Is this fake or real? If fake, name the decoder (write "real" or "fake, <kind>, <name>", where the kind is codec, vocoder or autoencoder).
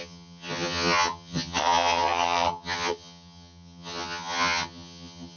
fake, vocoder, HiFi-GAN